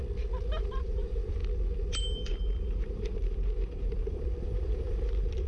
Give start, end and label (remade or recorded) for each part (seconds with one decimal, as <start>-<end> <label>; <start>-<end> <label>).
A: 0.0-0.5 recorded; 0.5-1.4 remade; 1.4-2.0 recorded; 2.0-5.5 remade